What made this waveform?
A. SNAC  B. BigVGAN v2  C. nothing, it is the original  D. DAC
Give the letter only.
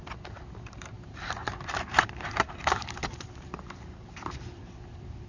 B